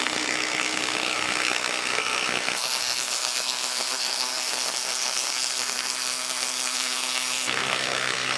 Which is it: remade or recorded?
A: remade